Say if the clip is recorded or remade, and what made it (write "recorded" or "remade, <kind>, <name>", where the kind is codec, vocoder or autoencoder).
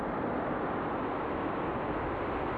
recorded